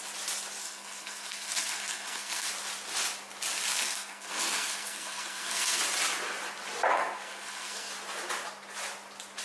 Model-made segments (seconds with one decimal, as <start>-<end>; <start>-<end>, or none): 0.6-2.5; 3.7-5.8; 6.9-7.9